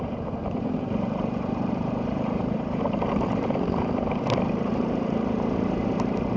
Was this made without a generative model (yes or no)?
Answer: no